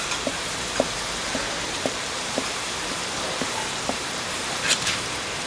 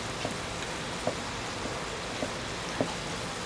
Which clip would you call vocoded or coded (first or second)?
first